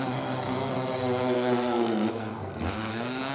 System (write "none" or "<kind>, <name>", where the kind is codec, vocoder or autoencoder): codec, SNAC